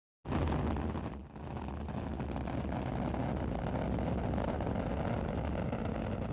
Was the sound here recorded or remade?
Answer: recorded